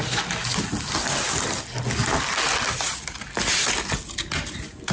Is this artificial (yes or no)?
no